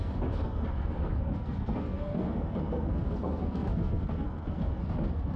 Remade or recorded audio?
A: remade